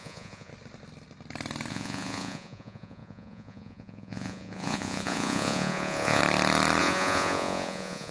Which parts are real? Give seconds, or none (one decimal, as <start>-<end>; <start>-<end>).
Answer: 0.5-1.7; 6.2-6.8